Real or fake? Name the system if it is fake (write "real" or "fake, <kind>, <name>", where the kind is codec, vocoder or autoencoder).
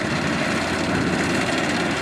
real